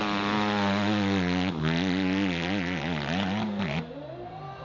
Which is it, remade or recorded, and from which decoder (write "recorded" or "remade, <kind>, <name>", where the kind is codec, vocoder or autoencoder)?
recorded